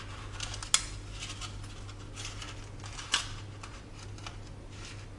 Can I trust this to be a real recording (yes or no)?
yes